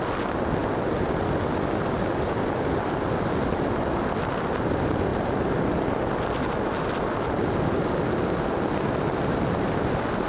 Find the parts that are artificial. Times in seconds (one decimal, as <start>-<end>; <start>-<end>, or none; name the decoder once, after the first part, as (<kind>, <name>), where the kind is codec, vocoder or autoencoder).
none

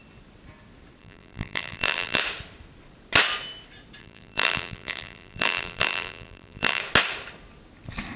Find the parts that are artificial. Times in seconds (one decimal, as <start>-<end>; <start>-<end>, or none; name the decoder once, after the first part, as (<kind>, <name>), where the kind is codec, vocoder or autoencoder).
1.0-2.2 (vocoder, BigVGAN v2); 4.0-6.8

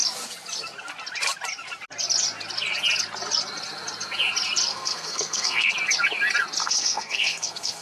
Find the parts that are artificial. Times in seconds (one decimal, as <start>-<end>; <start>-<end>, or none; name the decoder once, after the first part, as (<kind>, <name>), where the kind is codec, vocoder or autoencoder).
4.7-5.7 (codec, SNAC); 6.6-7.8

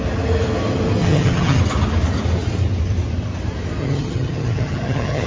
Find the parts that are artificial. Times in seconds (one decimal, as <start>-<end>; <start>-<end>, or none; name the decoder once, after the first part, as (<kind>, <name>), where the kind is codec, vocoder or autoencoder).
1.0-1.6 (vocoder, HiFi-GAN); 3.8-5.3

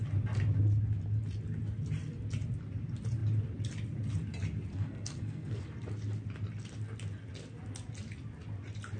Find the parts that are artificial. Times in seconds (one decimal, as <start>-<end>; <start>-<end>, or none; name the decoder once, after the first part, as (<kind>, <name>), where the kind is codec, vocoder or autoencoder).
4.7-5.6 (codec, SNAC)

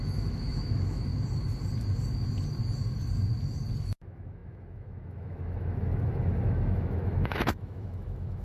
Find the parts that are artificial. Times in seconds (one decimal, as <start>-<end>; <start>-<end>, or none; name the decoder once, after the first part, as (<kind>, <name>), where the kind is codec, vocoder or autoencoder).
0.0-1.1 (autoencoder, DAC-VAE); 3.8-8.4